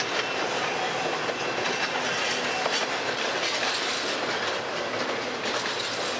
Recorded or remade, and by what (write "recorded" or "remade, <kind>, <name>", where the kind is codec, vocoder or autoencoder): recorded